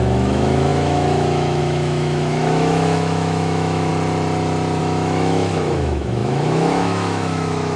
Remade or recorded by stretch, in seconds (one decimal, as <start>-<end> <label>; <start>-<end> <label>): 0.0-3.9 remade; 3.9-4.8 recorded; 4.8-7.8 remade